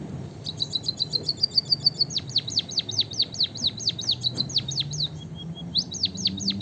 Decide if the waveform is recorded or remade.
recorded